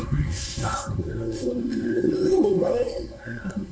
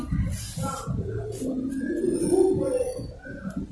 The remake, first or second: first